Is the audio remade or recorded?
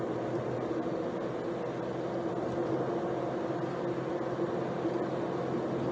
recorded